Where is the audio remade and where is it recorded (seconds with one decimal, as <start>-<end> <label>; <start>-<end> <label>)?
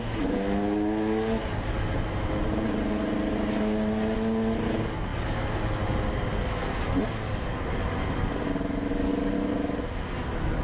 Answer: 0.0-10.6 recorded